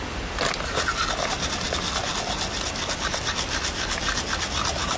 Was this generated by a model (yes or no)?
no